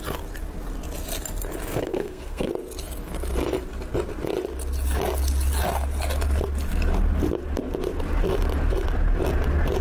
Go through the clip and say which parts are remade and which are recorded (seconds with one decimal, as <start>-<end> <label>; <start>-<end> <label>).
0.0-1.7 recorded; 1.7-2.5 remade; 2.5-9.8 recorded

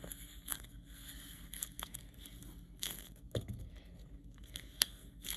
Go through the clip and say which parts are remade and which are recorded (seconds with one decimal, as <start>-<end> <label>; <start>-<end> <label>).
0.0-5.4 remade

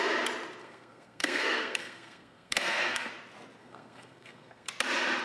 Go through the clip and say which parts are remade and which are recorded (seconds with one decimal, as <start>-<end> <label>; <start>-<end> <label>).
0.0-0.6 recorded; 0.6-3.1 remade; 3.1-3.6 recorded; 3.6-4.7 remade; 4.7-5.2 recorded

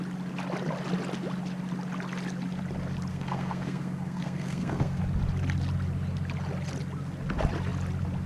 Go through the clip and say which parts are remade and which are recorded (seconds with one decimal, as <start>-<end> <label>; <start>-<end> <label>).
0.0-3.1 recorded; 3.1-5.0 remade; 5.0-8.3 recorded

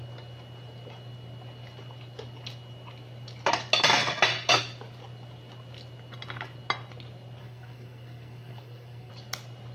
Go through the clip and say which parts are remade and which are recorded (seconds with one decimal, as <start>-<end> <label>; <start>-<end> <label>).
0.0-7.4 recorded; 7.4-9.1 remade; 9.1-9.7 recorded

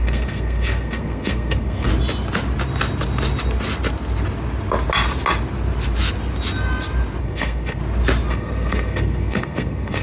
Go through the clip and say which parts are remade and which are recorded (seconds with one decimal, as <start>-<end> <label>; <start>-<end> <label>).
0.0-1.9 remade; 1.9-7.2 recorded; 7.2-7.8 remade; 7.8-8.3 recorded; 8.3-10.0 remade

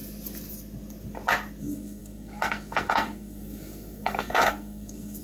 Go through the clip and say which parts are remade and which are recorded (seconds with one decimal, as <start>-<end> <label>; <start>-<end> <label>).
0.0-1.6 recorded; 1.6-5.2 remade